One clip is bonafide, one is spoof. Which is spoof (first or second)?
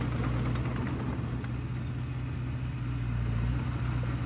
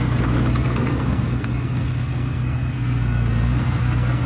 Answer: second